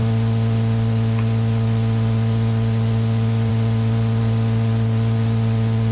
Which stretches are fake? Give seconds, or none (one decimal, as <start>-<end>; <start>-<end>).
3.5-5.9